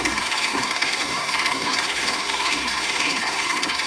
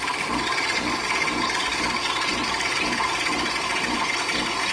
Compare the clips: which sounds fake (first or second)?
first